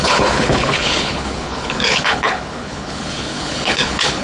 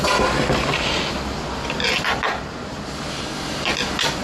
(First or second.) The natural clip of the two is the second